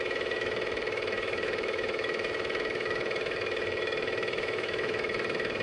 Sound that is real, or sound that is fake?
fake